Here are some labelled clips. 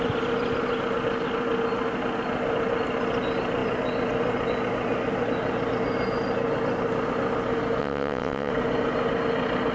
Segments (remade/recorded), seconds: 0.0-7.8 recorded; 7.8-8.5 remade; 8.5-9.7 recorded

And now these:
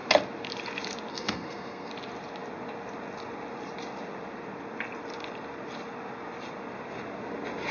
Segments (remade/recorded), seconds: 0.0-1.1 recorded; 1.1-1.9 remade; 1.9-7.7 recorded

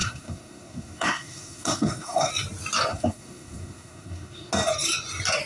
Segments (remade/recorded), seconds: 0.0-2.3 remade; 2.3-2.9 recorded; 2.9-4.5 remade; 4.5-5.5 recorded

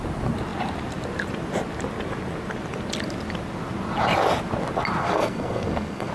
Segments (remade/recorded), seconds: 0.0-5.0 recorded; 5.0-6.1 remade

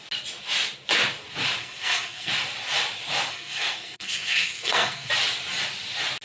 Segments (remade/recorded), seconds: 0.0-1.6 recorded; 1.6-2.3 remade; 2.3-3.3 recorded; 3.3-5.1 remade; 5.1-6.2 recorded

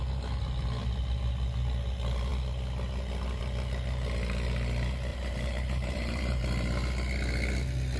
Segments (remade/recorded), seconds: 0.0-5.1 recorded; 5.1-6.4 remade; 6.4-8.0 recorded